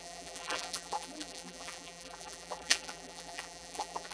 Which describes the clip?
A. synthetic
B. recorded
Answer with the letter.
A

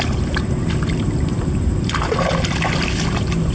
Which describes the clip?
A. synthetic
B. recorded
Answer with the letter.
B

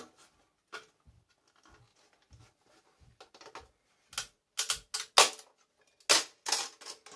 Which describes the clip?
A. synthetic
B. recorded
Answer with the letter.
B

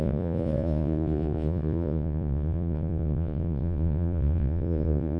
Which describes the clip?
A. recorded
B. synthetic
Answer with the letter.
B